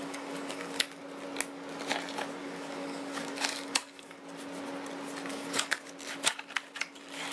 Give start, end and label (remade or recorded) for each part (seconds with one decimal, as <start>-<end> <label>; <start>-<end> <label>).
0.0-1.0 remade; 1.0-2.4 recorded; 2.4-4.2 remade; 4.2-5.3 recorded; 5.3-5.9 remade; 5.9-7.3 recorded